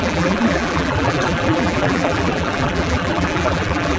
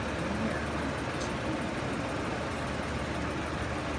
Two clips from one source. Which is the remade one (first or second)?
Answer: first